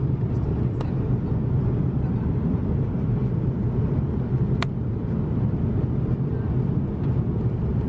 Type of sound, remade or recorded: recorded